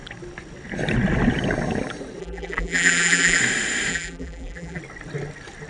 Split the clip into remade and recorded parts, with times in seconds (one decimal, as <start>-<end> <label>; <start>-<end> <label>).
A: 0.0-2.2 recorded; 2.2-3.4 remade; 3.4-3.9 recorded; 3.9-4.8 remade; 4.8-5.7 recorded